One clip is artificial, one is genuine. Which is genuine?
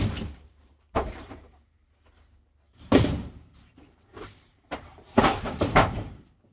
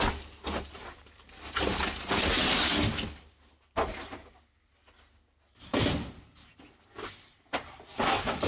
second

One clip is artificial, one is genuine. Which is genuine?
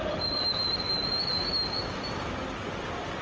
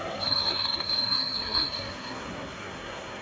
first